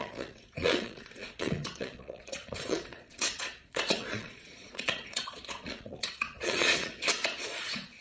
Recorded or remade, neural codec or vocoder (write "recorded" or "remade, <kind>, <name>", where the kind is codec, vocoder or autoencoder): remade, vocoder, Vocos